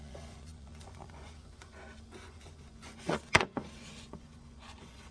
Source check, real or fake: fake